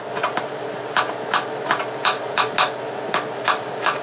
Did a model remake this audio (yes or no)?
no